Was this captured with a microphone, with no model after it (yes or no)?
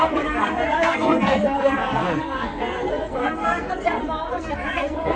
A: no